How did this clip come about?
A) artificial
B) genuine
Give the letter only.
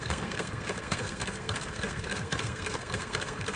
A